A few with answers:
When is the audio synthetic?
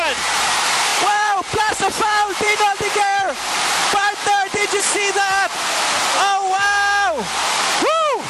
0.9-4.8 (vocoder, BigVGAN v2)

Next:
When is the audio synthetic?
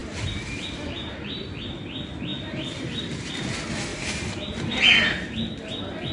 0.0-1.6 (vocoder, BigVGAN v2); 2.3-2.9; 3.9-4.7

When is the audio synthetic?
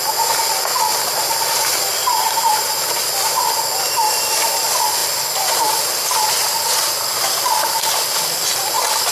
2.0-2.8 (vocoder, BigVGAN v2)